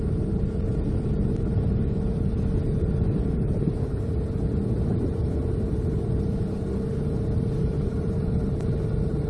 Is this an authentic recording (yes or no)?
yes